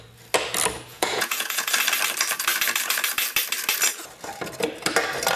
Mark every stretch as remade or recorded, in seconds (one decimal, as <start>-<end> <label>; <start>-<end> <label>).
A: 0.0-0.9 recorded; 0.9-1.7 remade; 1.7-5.4 recorded